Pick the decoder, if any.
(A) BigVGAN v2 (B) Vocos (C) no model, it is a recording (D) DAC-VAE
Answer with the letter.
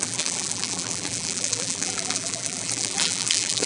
A